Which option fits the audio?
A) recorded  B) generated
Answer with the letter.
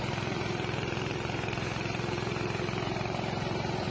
B